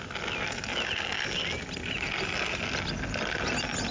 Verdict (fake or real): real